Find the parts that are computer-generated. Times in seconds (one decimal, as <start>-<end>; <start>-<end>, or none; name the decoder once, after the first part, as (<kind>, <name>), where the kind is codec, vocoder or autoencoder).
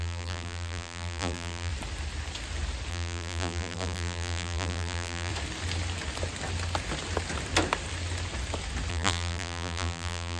0.0-1.7 (vocoder, BigVGAN v2); 2.9-5.3; 8.9-10.4